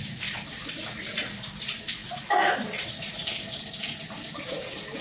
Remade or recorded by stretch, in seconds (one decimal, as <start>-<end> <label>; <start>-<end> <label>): 0.0-2.0 recorded; 2.0-3.2 remade; 3.2-5.0 recorded